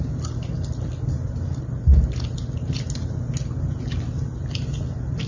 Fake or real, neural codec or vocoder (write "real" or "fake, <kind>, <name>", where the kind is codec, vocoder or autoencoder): real